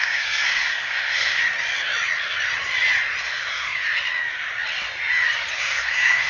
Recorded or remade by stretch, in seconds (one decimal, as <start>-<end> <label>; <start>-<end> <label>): 0.0-1.4 remade; 1.4-3.2 recorded; 3.2-3.8 remade; 3.8-5.6 recorded; 5.6-6.3 remade